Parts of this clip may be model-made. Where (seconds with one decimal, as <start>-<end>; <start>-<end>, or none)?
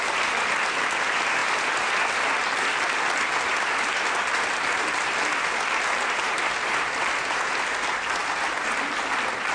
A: none